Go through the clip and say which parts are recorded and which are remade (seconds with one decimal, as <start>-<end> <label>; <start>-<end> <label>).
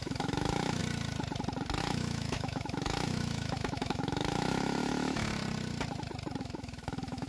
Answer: 0.0-0.8 remade; 0.8-1.8 recorded; 1.8-5.4 remade; 5.4-6.4 recorded; 6.4-7.3 remade